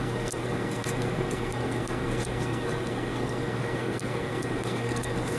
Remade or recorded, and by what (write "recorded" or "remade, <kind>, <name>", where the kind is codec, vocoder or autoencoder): remade, codec, SNAC